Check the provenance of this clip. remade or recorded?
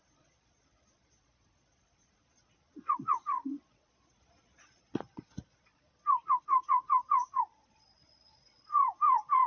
remade